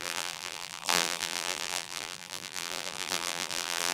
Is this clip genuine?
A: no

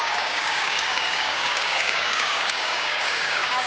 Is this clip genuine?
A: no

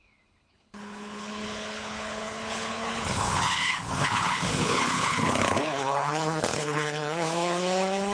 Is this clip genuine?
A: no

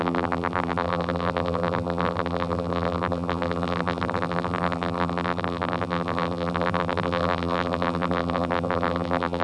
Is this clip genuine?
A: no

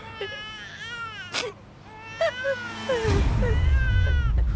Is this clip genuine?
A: yes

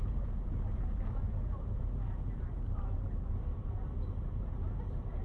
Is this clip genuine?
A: no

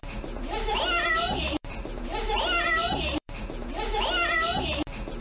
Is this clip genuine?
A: no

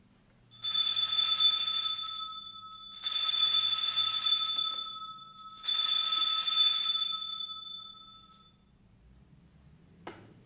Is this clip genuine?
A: yes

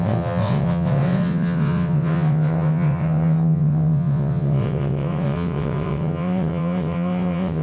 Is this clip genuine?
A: no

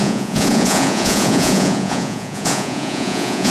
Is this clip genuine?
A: no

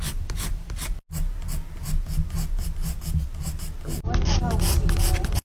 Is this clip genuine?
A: yes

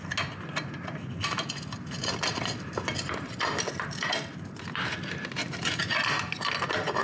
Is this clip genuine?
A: yes